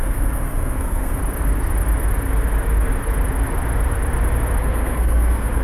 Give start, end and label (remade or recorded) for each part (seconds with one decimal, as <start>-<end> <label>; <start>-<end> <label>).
0.0-1.2 remade; 1.2-4.6 recorded; 4.6-5.6 remade